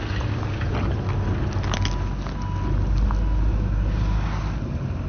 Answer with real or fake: real